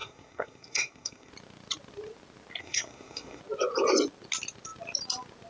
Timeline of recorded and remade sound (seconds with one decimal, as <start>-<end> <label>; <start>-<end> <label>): 0.0-1.3 remade; 1.3-2.6 recorded; 2.6-3.4 remade; 3.4-5.5 recorded

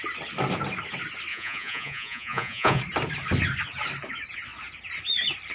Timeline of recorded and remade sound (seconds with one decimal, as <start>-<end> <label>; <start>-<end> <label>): 0.0-1.3 recorded; 1.3-2.8 remade; 2.8-5.5 recorded

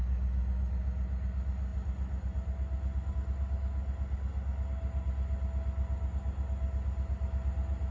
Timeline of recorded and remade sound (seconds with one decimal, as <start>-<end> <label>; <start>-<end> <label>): 0.0-7.9 recorded